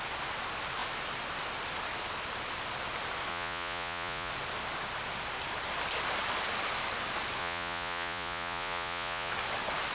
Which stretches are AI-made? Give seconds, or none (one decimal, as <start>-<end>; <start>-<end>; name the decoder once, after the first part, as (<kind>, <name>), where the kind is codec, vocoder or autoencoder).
3.3-4.3 (vocoder, Vocos); 7.4-9.3